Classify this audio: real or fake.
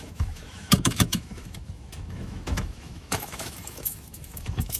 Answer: fake